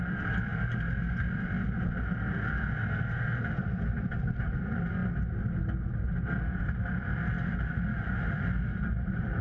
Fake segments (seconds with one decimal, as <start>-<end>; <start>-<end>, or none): 0.0-0.5; 1.2-2.8; 3.9-5.0; 6.6-9.4